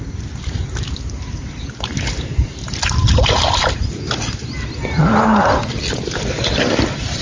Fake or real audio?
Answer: real